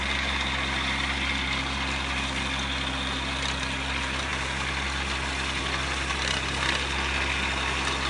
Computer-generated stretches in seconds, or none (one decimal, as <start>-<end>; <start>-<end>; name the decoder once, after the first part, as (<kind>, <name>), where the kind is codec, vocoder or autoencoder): none

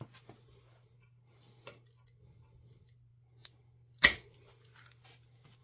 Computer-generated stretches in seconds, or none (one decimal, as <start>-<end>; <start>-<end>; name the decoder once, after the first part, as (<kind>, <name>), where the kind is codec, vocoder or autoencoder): none

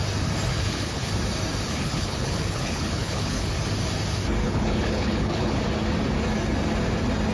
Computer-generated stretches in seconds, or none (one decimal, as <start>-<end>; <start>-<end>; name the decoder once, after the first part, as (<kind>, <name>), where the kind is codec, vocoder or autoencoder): 0.5-1.1 (codec, HILCodec); 1.7-3.5; 4.4-5.6

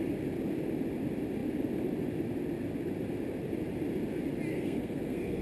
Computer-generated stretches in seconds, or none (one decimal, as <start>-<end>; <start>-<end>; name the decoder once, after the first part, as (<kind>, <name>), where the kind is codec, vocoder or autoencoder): 4.5-5.4 (codec, SNAC)

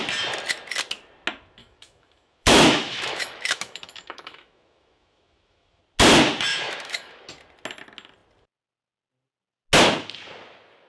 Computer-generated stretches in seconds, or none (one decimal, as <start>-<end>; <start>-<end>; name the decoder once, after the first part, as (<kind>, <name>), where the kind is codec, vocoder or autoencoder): 1.6-5.8 (autoencoder, DAC-VAE); 6.5-7.3